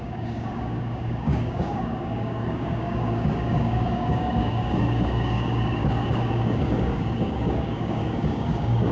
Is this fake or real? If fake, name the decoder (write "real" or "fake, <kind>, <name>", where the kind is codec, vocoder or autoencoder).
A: fake, codec, DAC